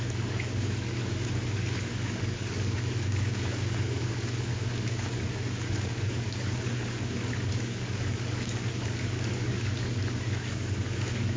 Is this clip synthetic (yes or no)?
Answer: yes